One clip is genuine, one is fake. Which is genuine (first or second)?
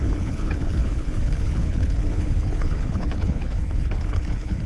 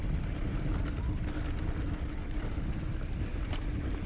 second